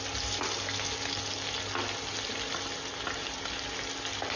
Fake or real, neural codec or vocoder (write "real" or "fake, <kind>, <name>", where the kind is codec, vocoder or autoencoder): real